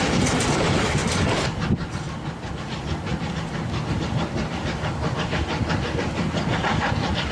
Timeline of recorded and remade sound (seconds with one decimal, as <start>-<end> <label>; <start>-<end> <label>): 0.0-1.0 remade; 1.0-2.6 recorded; 2.6-7.3 remade